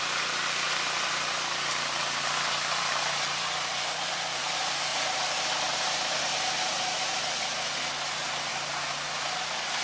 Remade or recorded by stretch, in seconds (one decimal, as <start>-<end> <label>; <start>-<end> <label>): 0.0-4.9 recorded; 4.9-7.2 remade; 7.2-9.8 recorded